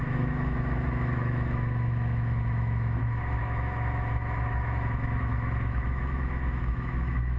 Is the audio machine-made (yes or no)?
yes